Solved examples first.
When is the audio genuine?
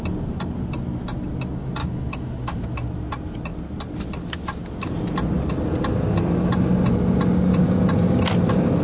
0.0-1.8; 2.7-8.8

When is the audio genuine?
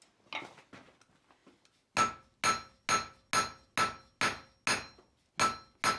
0.0-6.0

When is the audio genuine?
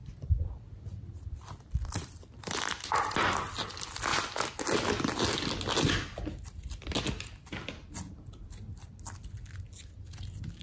2.4-10.6